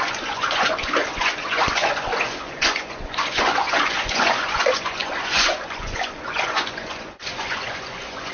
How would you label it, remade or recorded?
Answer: remade